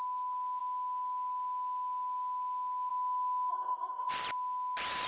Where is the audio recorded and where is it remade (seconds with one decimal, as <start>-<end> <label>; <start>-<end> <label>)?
0.0-3.5 recorded; 3.5-4.1 remade; 4.1-5.1 recorded